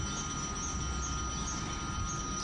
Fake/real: real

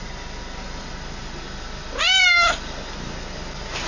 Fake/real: real